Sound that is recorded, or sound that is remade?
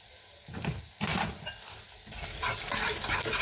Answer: recorded